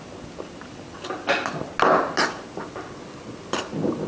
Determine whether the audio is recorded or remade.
recorded